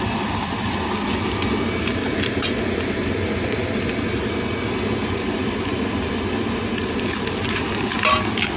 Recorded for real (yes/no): yes